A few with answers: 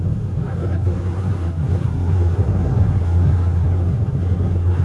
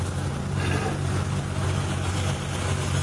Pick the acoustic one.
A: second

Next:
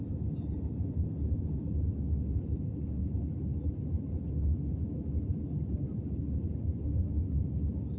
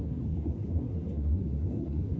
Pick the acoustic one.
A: first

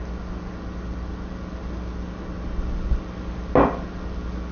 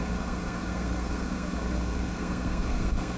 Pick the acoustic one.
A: first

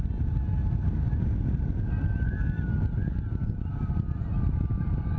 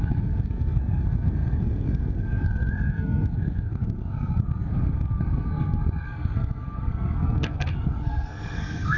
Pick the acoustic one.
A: first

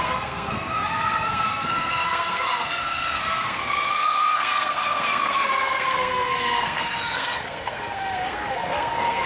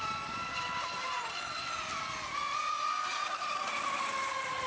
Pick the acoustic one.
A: second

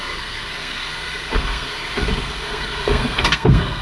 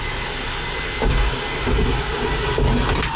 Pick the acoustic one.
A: second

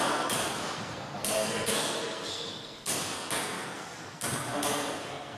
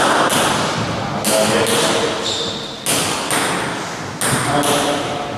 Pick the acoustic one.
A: second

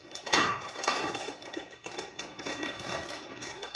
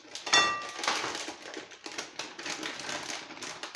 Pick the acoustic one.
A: second